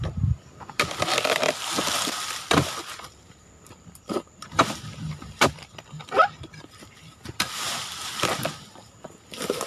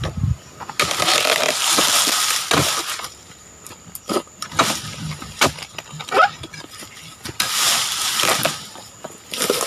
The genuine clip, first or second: second